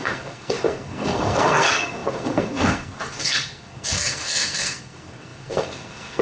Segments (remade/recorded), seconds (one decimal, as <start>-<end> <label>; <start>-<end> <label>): 0.0-6.2 remade